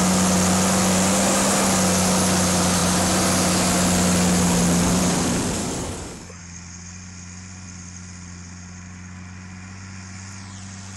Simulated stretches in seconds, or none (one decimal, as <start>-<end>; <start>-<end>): 5.6-6.4